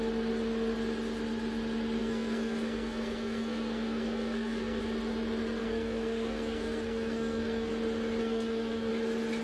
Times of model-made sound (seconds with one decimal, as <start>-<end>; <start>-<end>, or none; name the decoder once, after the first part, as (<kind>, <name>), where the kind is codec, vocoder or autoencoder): 2.0-4.8 (codec, SNAC); 5.6-7.7; 8.2-8.9